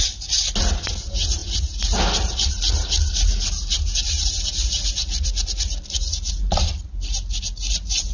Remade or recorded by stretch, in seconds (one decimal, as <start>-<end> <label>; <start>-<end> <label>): 0.0-8.1 recorded